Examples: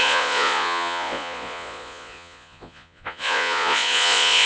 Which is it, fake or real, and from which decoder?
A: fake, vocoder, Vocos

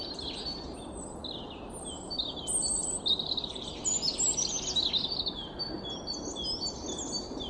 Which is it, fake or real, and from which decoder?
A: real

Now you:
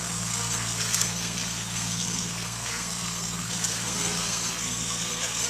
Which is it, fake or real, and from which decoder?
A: fake, codec, SNAC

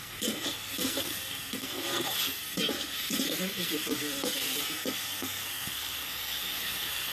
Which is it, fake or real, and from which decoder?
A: fake, codec, SNAC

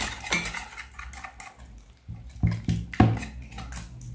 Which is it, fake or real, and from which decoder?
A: real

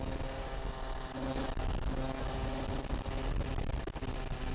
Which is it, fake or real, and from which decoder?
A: real